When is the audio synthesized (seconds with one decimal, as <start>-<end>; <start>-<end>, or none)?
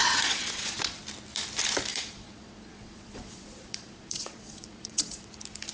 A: 0.0-1.0; 1.9-5.3